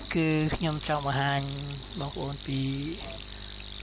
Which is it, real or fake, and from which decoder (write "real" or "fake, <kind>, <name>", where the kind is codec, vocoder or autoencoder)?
real